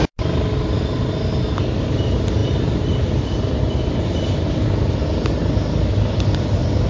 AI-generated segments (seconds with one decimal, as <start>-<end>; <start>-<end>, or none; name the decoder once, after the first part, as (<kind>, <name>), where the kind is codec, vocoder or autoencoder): none